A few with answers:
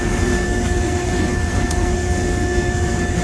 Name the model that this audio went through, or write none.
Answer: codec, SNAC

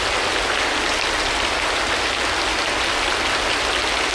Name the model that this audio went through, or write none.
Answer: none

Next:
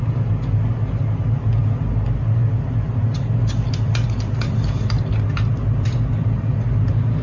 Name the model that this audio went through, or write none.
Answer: none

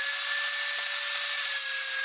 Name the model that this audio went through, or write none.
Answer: none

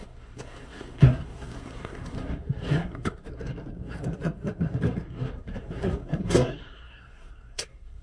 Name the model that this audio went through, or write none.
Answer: codec, SNAC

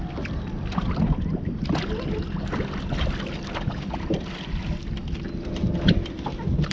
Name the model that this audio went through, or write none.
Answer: none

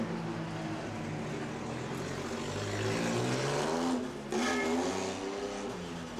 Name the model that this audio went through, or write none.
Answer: none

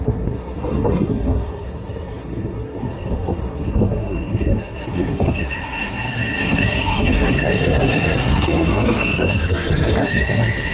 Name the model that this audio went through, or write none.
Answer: codec, SNAC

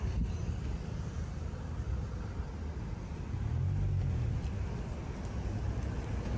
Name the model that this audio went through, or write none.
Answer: none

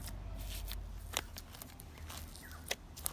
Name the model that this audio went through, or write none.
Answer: none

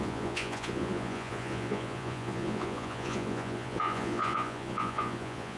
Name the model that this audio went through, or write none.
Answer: vocoder, Vocos